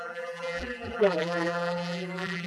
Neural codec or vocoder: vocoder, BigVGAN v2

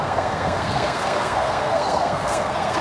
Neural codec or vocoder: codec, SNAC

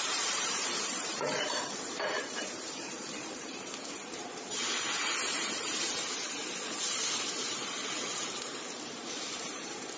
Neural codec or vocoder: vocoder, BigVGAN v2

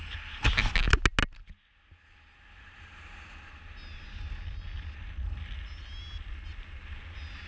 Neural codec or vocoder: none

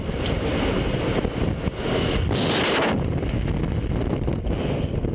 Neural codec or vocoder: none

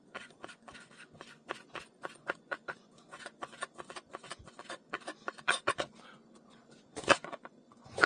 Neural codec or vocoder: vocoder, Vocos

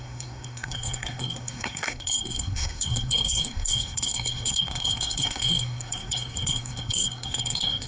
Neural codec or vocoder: codec, SNAC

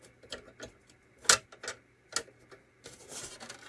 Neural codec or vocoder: none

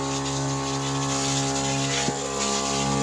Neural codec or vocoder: none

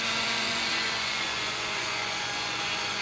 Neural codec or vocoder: vocoder, Vocos